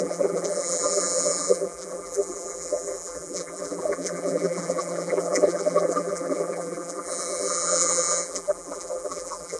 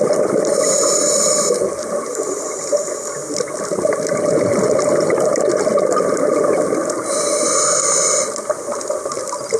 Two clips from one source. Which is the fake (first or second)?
first